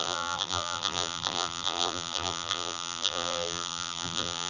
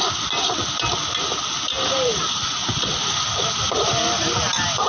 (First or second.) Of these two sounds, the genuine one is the second